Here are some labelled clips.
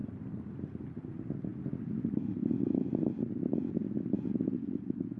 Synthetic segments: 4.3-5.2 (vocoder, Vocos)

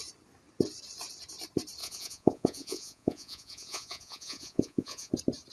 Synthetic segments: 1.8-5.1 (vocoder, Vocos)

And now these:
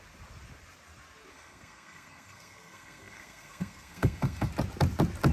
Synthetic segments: 1.3-4.5 (codec, SNAC)

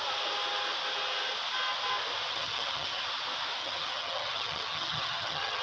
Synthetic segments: 2.3-3.0 (vocoder, HiFi-GAN); 3.6-5.6

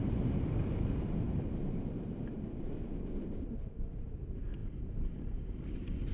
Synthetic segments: none